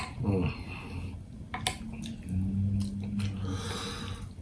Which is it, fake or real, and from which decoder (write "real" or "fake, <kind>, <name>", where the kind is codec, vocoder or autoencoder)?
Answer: real